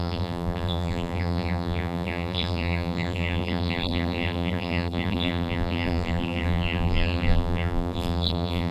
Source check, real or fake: fake